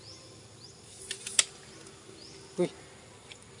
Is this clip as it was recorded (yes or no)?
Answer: yes